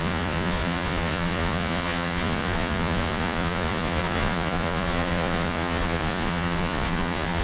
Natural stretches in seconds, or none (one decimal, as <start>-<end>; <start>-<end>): none